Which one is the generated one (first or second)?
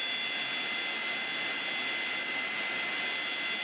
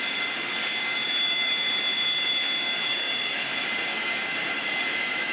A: second